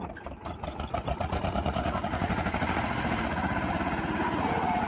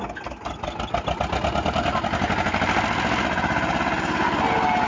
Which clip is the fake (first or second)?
first